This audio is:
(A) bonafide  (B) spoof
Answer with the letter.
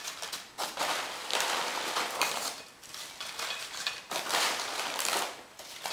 B